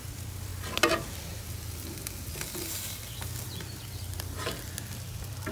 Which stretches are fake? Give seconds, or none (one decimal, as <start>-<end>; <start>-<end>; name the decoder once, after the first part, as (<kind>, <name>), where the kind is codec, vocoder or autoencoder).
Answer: 0.0-0.5 (vocoder, BigVGAN v2); 3.8-5.5